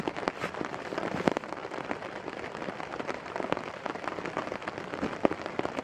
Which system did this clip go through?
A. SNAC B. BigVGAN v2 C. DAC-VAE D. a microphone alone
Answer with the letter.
B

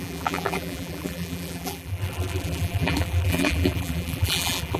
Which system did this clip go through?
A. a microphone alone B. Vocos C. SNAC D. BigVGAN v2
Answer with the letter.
D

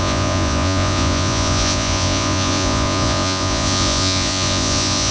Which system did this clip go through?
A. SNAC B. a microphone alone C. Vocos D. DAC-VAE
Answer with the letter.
C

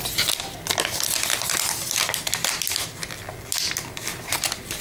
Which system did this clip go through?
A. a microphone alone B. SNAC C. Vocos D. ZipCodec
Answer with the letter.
A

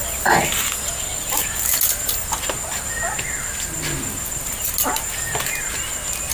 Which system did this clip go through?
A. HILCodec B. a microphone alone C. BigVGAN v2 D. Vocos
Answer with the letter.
B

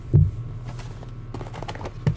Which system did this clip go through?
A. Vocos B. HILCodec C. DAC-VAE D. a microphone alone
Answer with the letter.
D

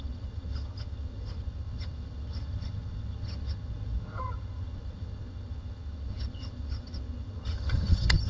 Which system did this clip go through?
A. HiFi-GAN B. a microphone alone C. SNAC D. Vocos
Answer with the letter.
A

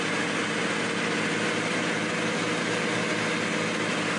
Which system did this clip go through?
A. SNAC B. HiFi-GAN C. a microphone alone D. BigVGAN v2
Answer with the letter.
C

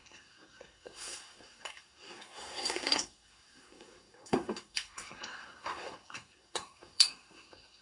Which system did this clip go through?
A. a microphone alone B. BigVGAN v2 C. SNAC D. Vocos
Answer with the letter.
C